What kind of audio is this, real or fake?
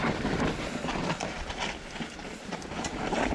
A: real